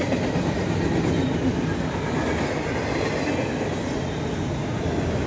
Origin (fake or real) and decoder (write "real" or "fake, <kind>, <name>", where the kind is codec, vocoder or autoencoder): real